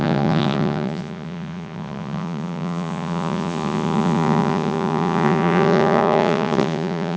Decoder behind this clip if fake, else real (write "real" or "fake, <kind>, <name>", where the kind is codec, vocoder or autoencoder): fake, vocoder, Vocos